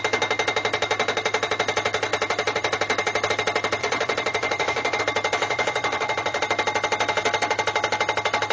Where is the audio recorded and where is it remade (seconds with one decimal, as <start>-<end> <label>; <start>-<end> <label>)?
0.0-3.8 recorded; 3.8-5.0 remade; 5.0-5.4 recorded; 5.4-6.4 remade; 6.4-8.5 recorded